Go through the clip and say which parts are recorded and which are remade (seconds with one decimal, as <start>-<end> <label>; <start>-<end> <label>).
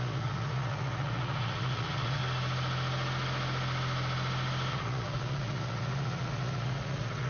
0.0-2.2 remade; 2.2-4.7 recorded; 4.7-7.3 remade